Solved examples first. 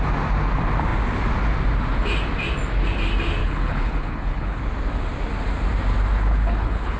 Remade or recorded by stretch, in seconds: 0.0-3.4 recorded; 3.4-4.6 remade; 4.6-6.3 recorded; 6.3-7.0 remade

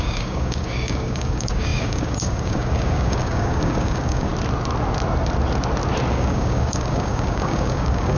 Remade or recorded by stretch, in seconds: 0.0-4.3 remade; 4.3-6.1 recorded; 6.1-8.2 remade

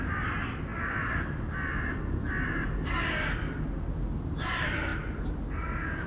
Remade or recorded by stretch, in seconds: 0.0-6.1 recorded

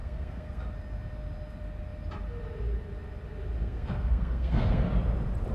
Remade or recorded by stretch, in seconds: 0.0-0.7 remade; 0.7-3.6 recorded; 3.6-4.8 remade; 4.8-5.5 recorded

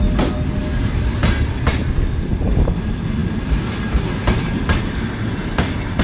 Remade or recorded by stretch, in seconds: 0.0-6.0 recorded

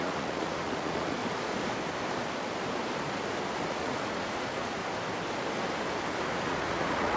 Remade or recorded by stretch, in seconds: 0.0-1.2 remade; 1.2-3.7 recorded; 3.7-4.8 remade; 4.8-6.4 recorded; 6.4-7.2 remade

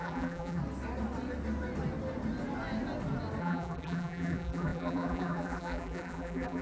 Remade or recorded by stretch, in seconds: 0.0-0.6 remade; 0.6-3.4 recorded; 3.4-6.6 remade

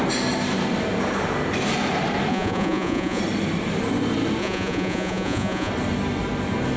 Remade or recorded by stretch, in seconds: 0.0-2.3 recorded; 2.3-3.2 remade; 3.2-4.4 recorded; 4.4-5.7 remade; 5.7-6.8 recorded